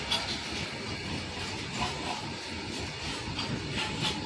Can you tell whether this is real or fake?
real